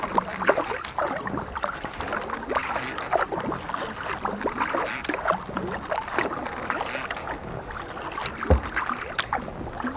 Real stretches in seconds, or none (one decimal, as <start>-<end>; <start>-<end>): 0.0-10.0